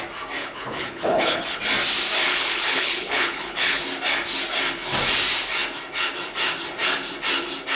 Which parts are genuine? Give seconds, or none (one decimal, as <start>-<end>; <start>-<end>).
0.0-0.4; 1.6-2.3; 3.8-7.8